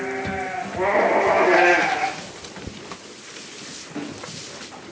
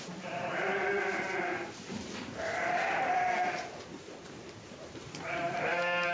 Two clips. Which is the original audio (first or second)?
first